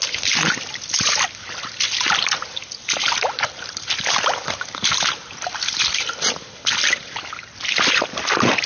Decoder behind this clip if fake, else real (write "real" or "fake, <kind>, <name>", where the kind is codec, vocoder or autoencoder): real